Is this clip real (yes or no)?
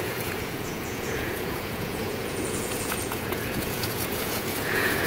no